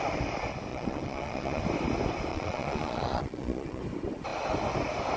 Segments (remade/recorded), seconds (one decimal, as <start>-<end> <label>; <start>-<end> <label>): 0.0-0.7 recorded; 0.7-1.6 remade; 1.6-2.3 recorded; 2.3-3.8 remade; 3.8-5.2 recorded